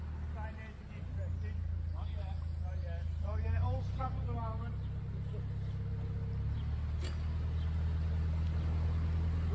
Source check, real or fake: real